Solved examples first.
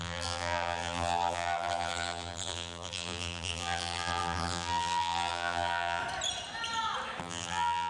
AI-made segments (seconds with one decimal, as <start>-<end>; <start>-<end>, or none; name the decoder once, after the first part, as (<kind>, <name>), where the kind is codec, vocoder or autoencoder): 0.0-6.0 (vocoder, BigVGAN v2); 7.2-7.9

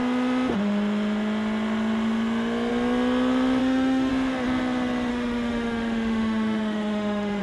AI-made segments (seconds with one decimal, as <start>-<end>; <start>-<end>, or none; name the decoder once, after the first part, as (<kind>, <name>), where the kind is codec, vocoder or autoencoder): 3.6-4.1 (autoencoder, DAC-VAE); 5.1-7.4

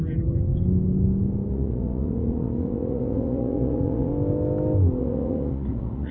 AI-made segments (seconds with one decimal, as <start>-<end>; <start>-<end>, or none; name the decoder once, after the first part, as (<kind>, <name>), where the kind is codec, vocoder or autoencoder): 1.5-4.1 (vocoder, Vocos); 5.0-6.1

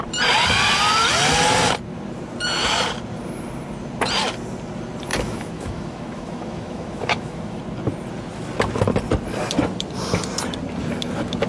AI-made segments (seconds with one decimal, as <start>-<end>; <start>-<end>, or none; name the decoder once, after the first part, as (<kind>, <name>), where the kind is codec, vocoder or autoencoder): 5.1-7.6 (autoencoder, DAC-VAE)

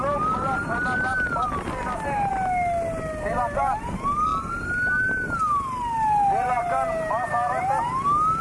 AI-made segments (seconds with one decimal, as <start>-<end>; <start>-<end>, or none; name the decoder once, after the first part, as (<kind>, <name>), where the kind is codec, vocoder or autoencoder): none

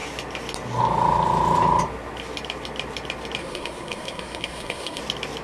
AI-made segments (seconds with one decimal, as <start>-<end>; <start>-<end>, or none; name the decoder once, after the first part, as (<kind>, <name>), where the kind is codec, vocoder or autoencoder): 3.4-5.0 (codec, SNAC)